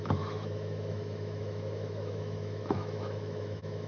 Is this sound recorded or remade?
remade